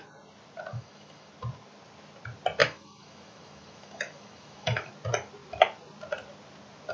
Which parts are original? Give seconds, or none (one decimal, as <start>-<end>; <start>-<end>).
0.0-0.7; 1.3-2.6; 4.9-6.9